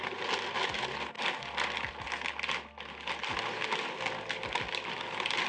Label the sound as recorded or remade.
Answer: recorded